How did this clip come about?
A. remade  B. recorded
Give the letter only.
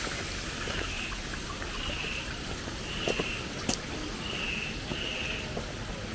B